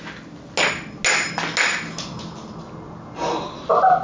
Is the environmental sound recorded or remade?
recorded